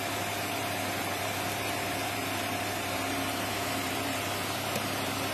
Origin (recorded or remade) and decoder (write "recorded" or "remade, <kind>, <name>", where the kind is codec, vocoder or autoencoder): remade, vocoder, BigVGAN v2